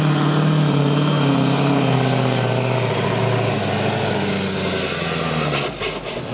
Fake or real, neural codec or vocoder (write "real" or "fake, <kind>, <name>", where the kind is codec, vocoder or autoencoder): real